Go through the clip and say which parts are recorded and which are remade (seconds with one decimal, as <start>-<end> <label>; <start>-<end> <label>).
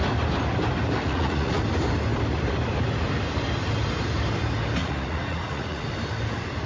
0.0-1.0 recorded; 1.0-1.6 remade; 1.6-4.8 recorded; 4.8-5.9 remade; 5.9-6.7 recorded